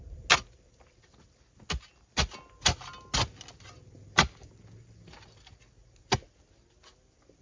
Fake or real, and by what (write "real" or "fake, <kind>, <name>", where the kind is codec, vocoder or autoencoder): real